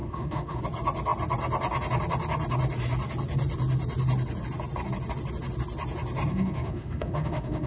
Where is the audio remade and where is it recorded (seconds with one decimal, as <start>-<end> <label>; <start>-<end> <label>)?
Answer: 0.0-0.6 remade; 0.6-6.3 recorded; 6.3-7.7 remade